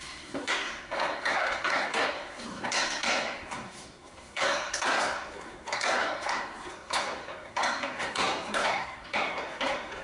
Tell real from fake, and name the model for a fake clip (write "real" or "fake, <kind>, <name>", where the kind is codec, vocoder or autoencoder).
fake, codec, SNAC